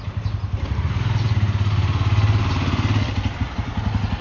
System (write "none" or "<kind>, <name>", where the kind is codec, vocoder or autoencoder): none